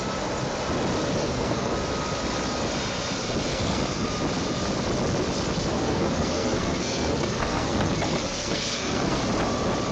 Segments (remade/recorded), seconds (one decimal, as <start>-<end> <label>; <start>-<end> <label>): 0.0-1.2 recorded; 1.2-1.7 remade; 1.7-3.5 recorded; 3.5-4.1 remade; 4.1-5.7 recorded; 5.7-9.2 remade; 9.2-9.9 recorded